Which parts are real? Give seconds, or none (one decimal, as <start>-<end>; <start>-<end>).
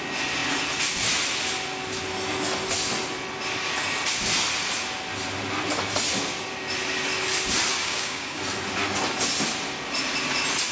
0.0-7.7; 8.4-10.7